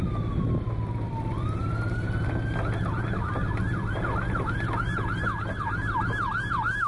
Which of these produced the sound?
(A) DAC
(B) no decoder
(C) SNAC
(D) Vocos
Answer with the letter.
B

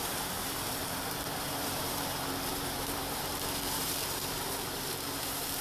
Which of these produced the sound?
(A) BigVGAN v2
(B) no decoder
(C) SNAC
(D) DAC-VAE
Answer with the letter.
A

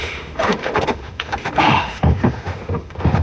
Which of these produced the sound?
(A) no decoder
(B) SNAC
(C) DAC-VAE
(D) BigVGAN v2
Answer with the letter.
C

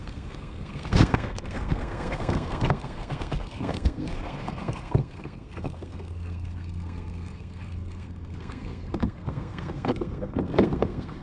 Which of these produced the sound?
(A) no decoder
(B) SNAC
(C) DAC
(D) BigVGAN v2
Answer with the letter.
B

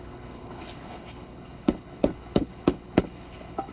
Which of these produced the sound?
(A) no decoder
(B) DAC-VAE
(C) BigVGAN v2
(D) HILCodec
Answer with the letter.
D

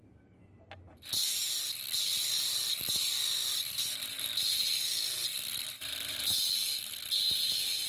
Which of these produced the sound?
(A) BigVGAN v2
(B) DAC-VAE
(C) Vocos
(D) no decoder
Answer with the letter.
D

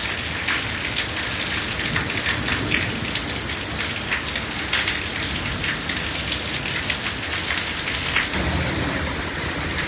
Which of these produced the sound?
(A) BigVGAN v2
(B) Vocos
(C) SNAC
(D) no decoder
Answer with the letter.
D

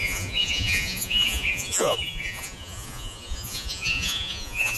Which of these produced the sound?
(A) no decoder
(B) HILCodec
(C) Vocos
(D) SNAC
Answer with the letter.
C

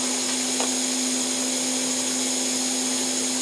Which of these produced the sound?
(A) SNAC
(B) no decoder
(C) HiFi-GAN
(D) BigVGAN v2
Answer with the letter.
B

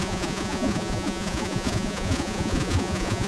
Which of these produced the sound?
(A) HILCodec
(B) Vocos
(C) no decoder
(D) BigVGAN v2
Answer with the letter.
B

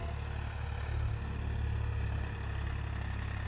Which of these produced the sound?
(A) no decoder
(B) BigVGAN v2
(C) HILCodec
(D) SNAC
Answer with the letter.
A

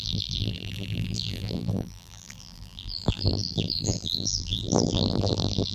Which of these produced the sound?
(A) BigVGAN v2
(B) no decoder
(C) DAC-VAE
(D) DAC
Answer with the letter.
A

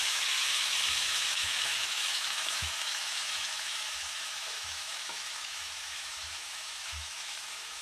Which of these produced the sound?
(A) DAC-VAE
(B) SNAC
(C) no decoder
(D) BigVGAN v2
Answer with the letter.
A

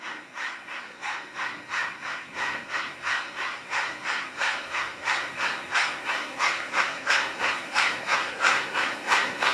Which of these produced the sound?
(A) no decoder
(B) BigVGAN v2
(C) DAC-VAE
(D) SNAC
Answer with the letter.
D